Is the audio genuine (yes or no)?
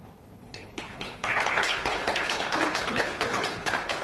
no